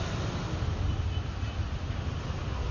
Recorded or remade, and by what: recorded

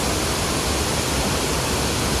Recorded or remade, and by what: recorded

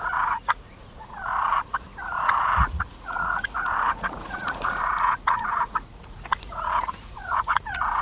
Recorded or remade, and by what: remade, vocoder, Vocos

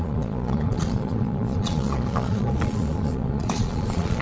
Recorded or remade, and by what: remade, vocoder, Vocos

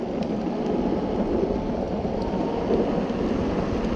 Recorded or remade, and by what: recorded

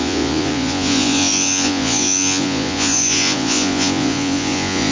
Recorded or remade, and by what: remade, vocoder, Vocos